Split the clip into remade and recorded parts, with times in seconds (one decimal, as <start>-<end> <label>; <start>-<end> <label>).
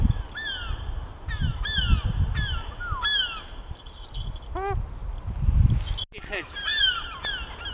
0.0-5.0 recorded; 5.0-5.7 remade; 5.7-6.7 recorded; 6.7-7.3 remade; 7.3-7.7 recorded